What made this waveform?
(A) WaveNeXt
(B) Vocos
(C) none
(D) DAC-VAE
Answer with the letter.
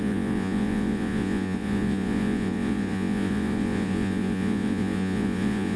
B